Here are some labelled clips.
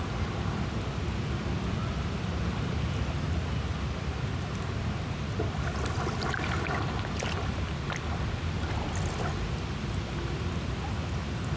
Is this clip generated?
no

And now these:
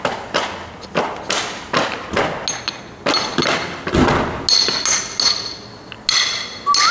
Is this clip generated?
no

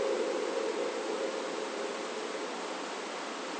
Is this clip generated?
no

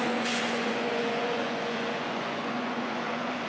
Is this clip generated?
yes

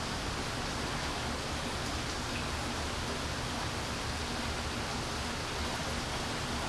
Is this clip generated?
no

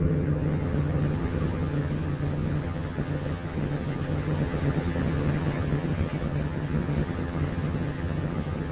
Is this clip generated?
yes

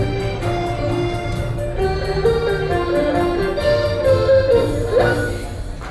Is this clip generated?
no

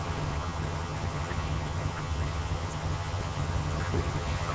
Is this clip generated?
yes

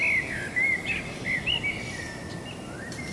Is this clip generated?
no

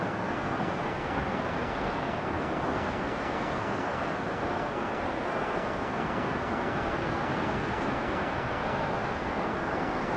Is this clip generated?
yes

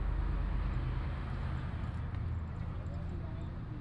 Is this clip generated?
no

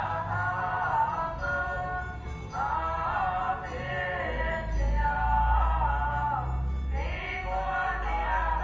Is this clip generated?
no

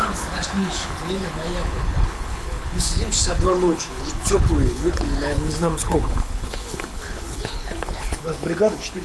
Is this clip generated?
yes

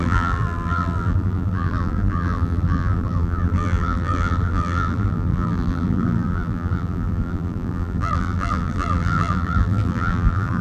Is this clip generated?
yes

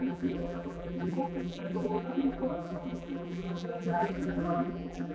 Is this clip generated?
yes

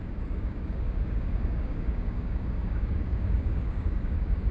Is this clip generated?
yes